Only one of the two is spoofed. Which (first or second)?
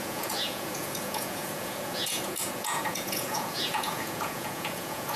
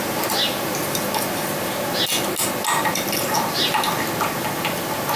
first